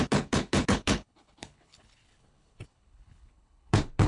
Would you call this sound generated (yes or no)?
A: yes